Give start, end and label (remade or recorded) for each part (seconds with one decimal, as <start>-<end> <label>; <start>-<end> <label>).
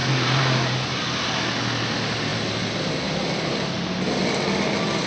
0.0-5.1 recorded